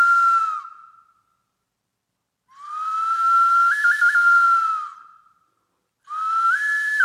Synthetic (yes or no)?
no